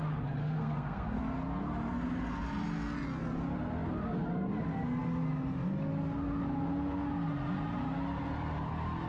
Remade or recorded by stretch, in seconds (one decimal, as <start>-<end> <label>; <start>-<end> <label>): 0.0-0.4 recorded; 0.4-1.2 remade; 1.2-9.1 recorded